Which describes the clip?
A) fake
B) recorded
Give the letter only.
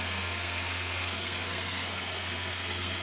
A